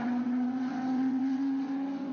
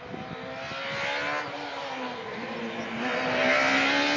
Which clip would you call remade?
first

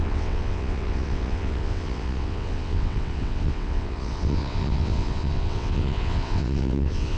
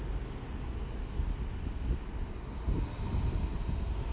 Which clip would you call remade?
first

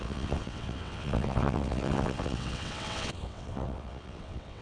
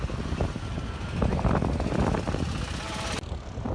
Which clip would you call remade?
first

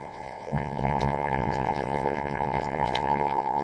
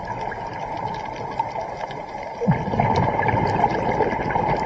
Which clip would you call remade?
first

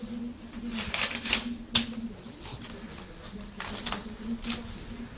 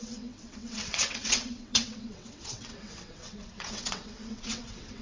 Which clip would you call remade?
second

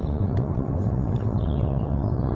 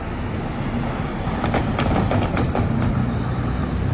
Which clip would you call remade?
first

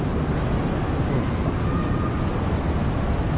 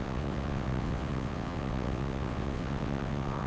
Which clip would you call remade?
second